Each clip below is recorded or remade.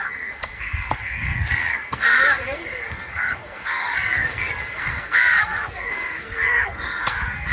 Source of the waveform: remade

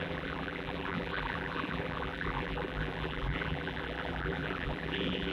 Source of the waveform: remade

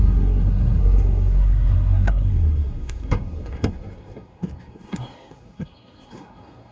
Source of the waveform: remade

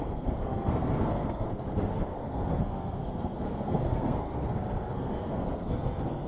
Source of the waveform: remade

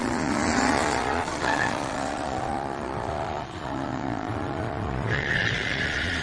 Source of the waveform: remade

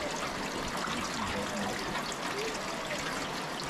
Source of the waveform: recorded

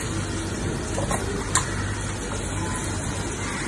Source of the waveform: recorded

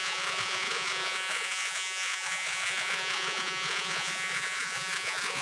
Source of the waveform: remade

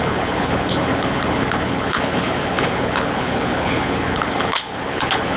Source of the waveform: remade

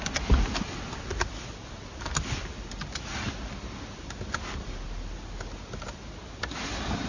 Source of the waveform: recorded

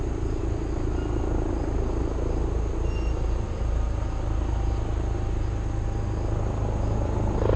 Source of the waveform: recorded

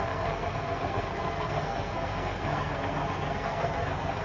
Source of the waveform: remade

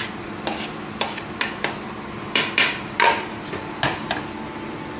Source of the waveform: recorded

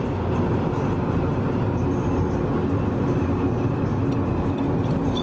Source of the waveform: recorded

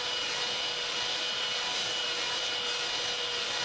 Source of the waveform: recorded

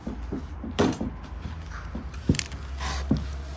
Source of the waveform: recorded